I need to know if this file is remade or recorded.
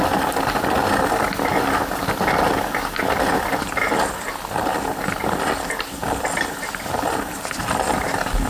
recorded